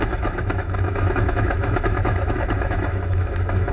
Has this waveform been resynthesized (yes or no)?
yes